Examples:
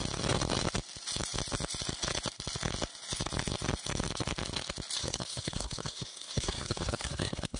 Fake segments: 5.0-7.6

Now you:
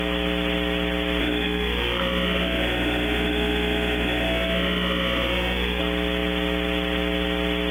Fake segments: 1.2-5.8

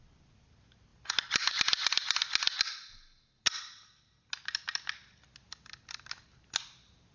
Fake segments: none

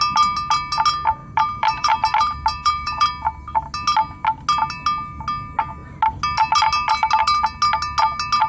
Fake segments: 1.2-3.1